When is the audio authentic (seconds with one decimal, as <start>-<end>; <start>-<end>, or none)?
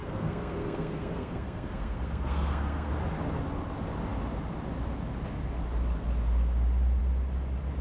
2.9-7.8